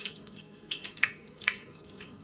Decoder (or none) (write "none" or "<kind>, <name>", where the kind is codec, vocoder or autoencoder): codec, SNAC